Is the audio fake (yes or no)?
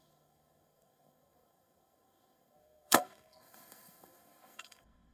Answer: yes